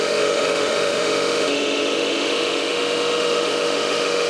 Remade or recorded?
remade